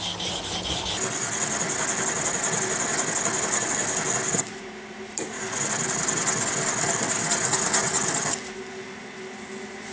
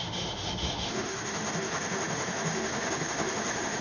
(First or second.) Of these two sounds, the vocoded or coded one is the second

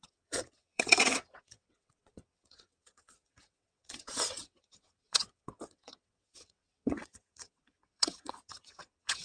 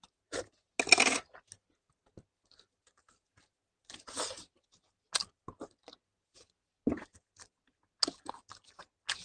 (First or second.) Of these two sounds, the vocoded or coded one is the first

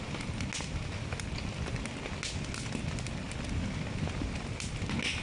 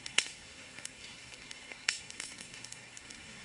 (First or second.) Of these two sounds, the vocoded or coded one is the second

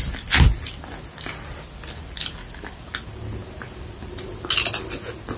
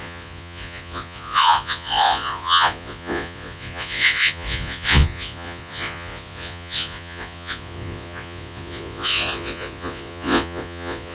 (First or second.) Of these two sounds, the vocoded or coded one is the second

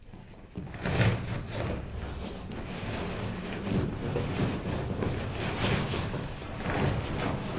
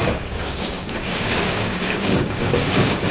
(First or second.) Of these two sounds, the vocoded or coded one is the second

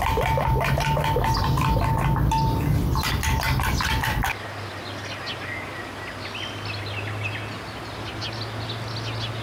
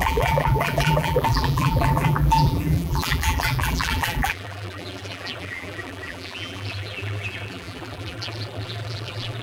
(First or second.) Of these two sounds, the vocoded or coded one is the second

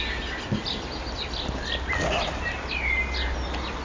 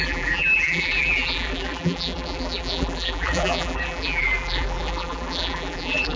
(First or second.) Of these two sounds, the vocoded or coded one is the second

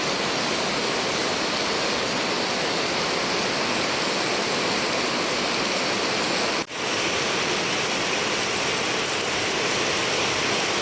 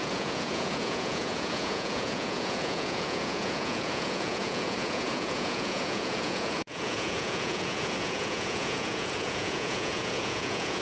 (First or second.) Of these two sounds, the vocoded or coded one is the second